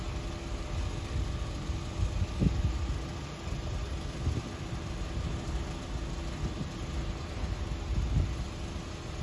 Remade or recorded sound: recorded